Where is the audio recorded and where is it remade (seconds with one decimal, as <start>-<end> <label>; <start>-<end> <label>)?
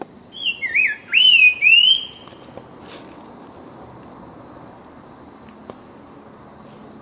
0.0-7.0 recorded